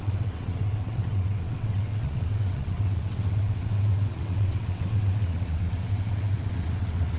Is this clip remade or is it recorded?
remade